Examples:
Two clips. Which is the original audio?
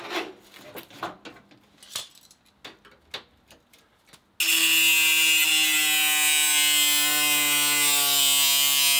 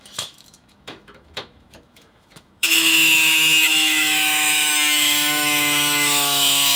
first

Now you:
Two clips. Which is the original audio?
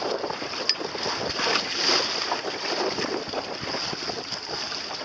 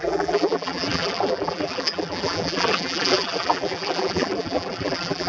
first